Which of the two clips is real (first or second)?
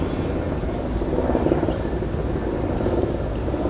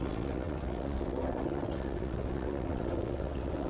first